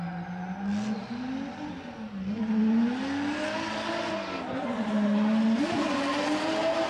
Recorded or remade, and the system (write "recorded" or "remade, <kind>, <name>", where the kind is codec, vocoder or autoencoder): recorded